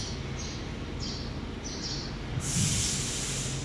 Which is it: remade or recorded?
recorded